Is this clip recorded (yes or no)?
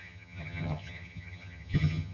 no